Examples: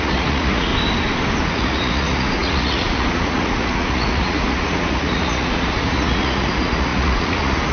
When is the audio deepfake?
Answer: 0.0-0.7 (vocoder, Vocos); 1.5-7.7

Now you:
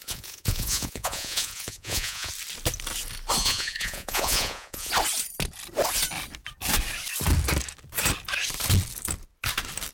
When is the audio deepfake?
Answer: 0.0-2.3 (vocoder, Vocos); 3.4-4.9

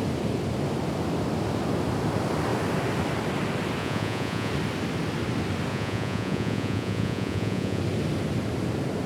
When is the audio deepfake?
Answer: 3.8-4.5 (vocoder, Vocos); 5.7-7.8

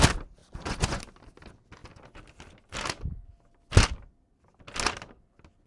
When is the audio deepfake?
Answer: 0.4-1.0 (vocoder, Vocos)